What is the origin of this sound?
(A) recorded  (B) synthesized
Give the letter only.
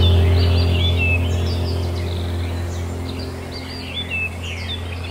A